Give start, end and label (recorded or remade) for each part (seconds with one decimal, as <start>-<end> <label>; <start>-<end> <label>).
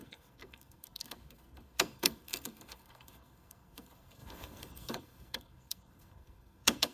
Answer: 0.0-6.9 remade